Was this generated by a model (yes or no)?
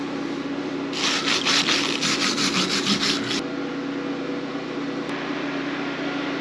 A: no